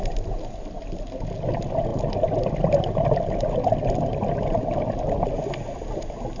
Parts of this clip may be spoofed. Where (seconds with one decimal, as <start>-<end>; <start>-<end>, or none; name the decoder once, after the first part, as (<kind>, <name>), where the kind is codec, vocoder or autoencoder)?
none